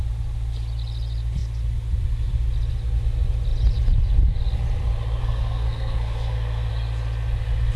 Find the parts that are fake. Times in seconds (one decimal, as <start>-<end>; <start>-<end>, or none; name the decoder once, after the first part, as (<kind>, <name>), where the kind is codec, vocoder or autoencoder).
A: 5.2-6.7 (codec, SNAC)